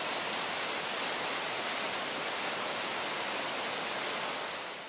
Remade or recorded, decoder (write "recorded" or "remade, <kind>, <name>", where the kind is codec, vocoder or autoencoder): recorded